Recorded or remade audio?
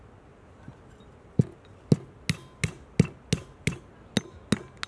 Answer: recorded